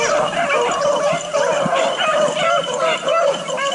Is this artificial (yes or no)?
yes